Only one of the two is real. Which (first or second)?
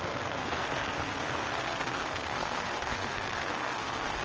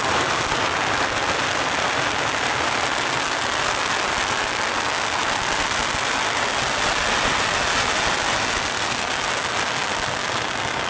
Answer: second